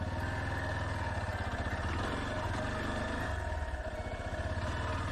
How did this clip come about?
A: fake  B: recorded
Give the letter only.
B